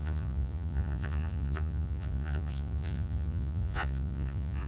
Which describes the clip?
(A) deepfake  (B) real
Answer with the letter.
A